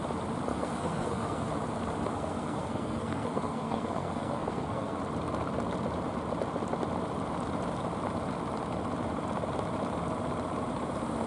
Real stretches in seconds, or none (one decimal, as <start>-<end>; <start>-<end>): 0.0-0.5; 1.5-2.1; 5.0-11.3